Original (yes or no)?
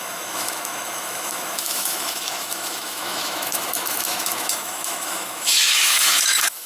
no